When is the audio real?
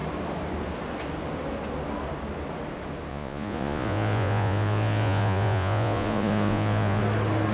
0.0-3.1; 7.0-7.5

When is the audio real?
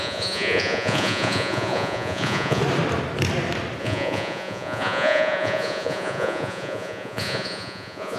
2.6-3.8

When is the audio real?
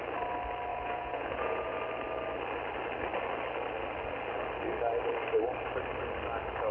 0.0-0.7; 1.8-6.7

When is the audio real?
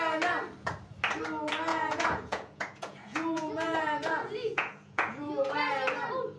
0.0-1.7; 5.5-6.4